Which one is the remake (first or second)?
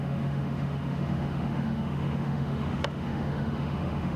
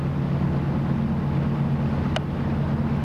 first